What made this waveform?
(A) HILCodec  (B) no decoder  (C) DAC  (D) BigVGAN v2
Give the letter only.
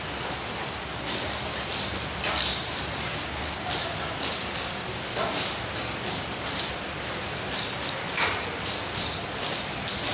B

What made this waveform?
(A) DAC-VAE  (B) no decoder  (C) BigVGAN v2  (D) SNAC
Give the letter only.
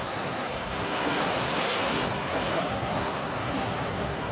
D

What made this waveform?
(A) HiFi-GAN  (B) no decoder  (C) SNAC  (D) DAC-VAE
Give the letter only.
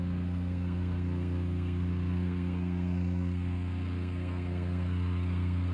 C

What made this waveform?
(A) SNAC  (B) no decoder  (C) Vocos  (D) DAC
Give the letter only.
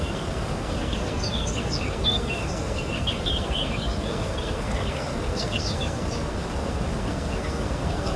A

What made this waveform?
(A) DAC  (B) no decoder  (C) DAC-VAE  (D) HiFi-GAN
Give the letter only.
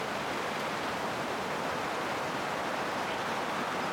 B